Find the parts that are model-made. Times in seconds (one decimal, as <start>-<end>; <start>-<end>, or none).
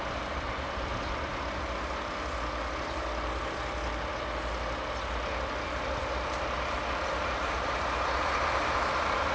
none